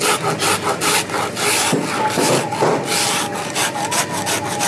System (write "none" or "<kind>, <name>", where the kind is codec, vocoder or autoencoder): none